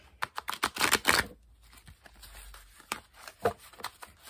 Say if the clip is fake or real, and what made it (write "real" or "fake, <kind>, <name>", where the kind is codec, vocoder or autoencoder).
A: real